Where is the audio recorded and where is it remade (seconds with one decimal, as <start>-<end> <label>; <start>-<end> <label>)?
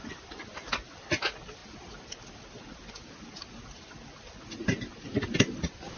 0.0-6.0 recorded